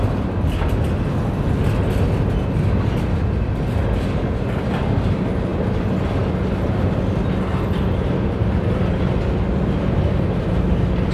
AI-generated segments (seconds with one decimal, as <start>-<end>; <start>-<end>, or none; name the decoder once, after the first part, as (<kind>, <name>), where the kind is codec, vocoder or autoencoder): none